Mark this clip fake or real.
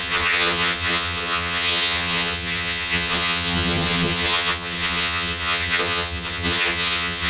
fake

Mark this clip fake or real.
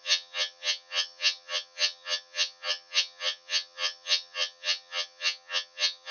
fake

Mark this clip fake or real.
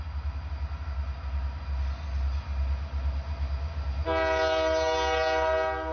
real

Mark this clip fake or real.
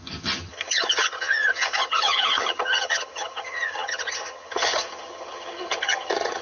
fake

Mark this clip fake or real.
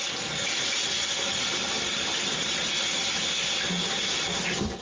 real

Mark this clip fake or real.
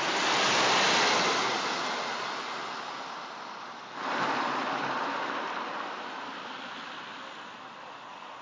real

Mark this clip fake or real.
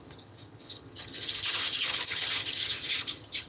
fake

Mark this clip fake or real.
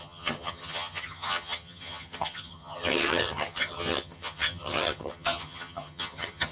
fake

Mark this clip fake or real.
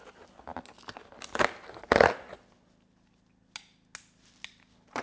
real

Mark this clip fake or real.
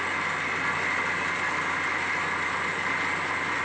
real